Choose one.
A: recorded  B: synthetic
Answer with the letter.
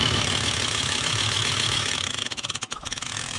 B